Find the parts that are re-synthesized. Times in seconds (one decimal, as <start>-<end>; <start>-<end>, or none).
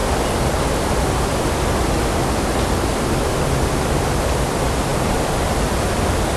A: none